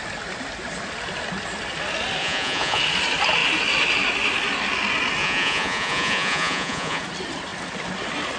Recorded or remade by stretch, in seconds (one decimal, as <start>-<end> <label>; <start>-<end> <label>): 0.0-2.2 recorded; 2.2-2.8 remade; 2.8-5.2 recorded; 5.2-7.0 remade; 7.0-8.4 recorded